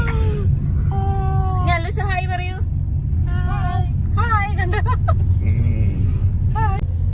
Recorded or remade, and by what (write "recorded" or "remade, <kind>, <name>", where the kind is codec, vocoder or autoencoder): recorded